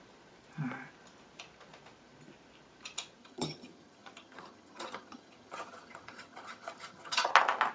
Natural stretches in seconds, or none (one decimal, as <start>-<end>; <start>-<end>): 0.0-3.2; 7.3-7.7